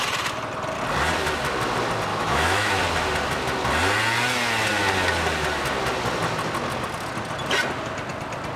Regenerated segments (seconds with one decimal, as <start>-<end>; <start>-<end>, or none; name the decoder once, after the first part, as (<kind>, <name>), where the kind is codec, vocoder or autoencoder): 2.1-2.8 (autoencoder, DAC-VAE)